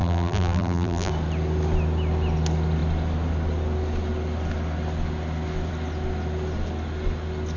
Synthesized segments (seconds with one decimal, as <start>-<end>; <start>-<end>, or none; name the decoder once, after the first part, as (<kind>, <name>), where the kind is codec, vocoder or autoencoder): 0.0-1.1 (vocoder, BigVGAN v2)